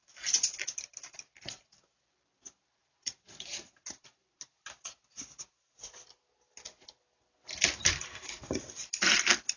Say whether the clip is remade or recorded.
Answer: recorded